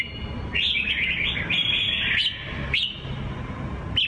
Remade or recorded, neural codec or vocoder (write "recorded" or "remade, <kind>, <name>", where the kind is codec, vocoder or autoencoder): recorded